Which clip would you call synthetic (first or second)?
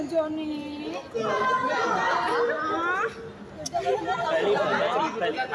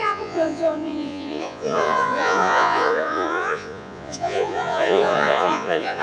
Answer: second